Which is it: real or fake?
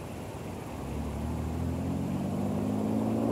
real